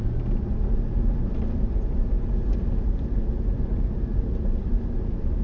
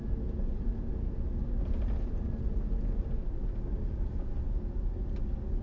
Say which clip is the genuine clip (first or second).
second